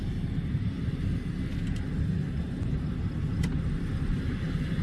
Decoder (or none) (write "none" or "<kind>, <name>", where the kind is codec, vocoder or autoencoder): none